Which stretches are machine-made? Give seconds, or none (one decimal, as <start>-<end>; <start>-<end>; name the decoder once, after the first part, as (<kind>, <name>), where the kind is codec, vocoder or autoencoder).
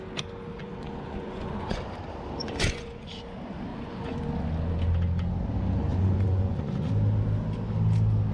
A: 0.6-1.8 (vocoder, Vocos); 2.4-3.1; 3.7-4.2; 5.9-6.9